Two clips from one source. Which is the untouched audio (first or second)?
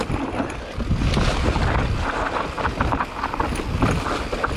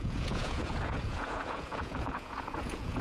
first